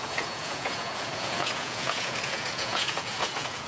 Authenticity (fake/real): fake